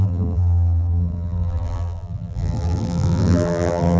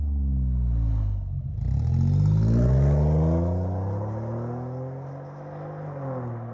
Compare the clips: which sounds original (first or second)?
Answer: second